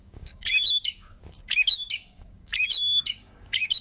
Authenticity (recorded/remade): remade